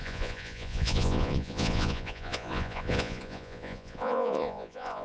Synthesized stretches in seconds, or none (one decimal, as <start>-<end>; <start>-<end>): 0.0-5.0